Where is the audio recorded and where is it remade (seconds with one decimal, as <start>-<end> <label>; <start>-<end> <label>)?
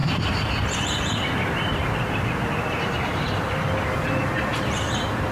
0.0-3.2 remade; 3.2-4.5 recorded; 4.5-5.3 remade